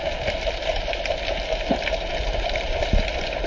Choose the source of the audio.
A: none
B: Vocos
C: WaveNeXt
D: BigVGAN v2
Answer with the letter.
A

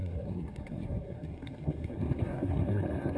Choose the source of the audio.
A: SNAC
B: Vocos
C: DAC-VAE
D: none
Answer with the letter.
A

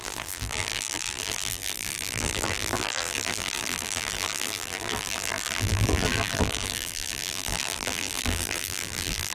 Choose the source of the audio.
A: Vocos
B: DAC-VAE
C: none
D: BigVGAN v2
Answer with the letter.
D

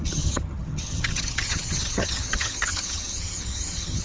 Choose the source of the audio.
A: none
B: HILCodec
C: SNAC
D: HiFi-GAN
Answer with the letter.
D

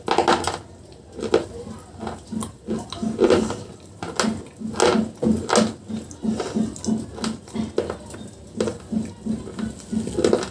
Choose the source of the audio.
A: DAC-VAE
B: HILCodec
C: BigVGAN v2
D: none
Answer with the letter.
D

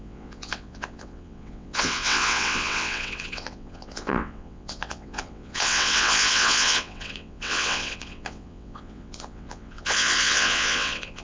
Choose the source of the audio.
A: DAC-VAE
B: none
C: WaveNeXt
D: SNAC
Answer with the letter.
C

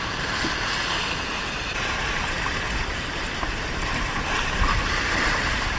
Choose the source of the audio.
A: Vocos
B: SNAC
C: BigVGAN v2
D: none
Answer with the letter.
C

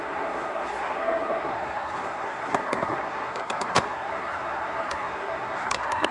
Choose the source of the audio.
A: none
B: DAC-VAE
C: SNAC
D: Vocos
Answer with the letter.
C